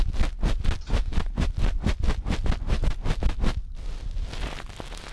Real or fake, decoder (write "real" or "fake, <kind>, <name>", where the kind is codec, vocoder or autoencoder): real